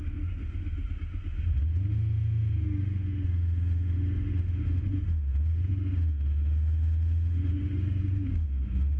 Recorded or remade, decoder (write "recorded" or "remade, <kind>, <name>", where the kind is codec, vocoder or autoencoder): remade, autoencoder, DAC-VAE